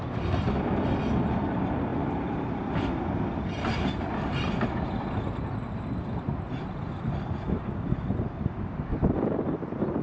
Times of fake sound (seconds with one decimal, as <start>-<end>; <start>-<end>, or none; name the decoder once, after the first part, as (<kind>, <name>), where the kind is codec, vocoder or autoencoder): 0.0-10.0 (vocoder, BigVGAN v2)